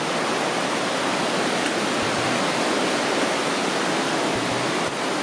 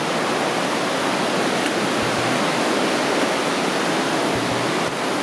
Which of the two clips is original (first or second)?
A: second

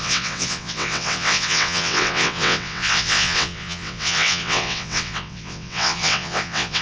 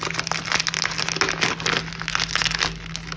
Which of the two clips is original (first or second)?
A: second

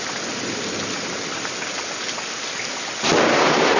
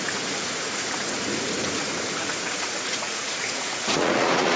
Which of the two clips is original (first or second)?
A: first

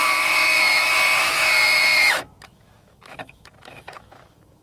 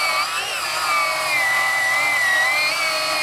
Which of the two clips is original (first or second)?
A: second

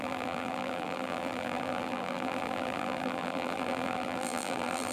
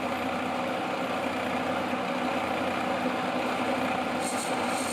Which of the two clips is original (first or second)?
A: second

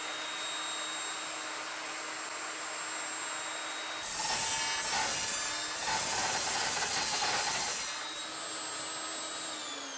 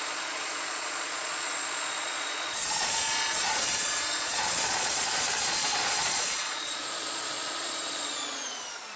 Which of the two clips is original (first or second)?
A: first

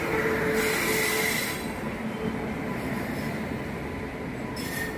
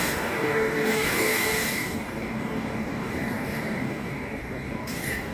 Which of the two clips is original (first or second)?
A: first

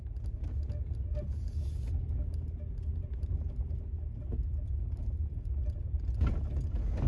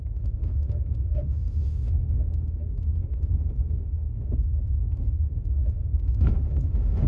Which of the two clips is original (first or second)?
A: first